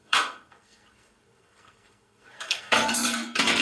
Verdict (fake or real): fake